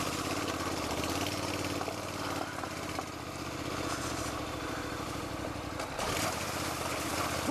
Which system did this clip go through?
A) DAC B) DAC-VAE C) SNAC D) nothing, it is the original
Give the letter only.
D